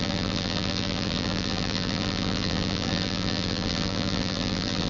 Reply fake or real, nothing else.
fake